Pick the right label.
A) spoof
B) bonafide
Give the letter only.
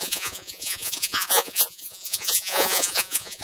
A